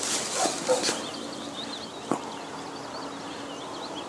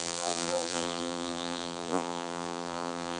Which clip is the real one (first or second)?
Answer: first